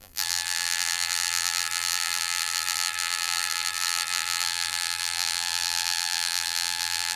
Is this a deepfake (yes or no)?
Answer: yes